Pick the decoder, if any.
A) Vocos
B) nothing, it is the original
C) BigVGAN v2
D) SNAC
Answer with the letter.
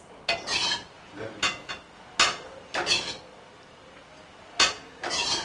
B